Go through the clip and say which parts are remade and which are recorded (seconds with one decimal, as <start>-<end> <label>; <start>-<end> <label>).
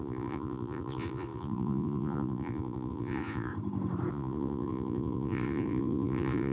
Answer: 0.0-3.5 remade; 3.5-4.1 recorded; 4.1-6.5 remade